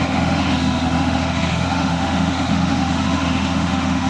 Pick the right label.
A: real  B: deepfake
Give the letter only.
B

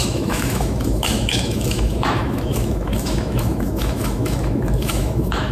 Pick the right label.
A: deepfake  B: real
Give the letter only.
A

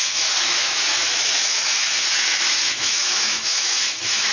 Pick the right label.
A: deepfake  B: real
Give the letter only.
A